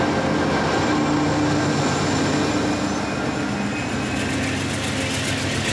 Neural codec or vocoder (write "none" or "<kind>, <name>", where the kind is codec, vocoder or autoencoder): none